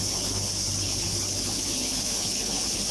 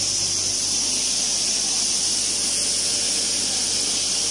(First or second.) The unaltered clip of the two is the second